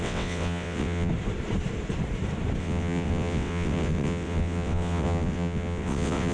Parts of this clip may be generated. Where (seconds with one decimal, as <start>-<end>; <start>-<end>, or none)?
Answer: 0.0-1.1; 2.6-6.3